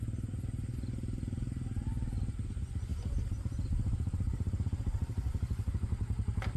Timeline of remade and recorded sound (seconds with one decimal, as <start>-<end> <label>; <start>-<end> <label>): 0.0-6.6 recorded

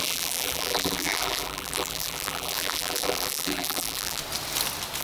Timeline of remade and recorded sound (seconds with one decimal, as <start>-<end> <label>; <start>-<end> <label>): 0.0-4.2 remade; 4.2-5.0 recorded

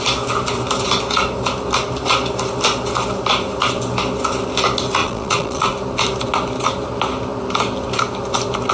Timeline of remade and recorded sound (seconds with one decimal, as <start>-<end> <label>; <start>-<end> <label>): 0.0-5.0 recorded; 5.0-5.6 remade; 5.6-8.7 recorded

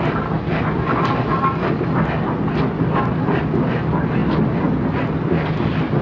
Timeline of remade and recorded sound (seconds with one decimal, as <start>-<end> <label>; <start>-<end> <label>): 0.0-6.0 recorded

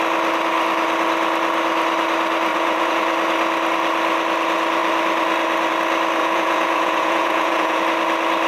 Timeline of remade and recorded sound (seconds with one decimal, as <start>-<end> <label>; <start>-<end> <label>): 0.0-2.5 recorded; 2.5-3.0 remade; 3.0-6.2 recorded; 6.2-7.8 remade; 7.8-8.5 recorded

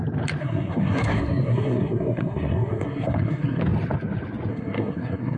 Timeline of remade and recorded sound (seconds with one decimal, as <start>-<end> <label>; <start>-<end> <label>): 0.0-0.4 recorded; 0.4-3.6 remade; 3.6-4.5 recorded; 4.5-5.4 remade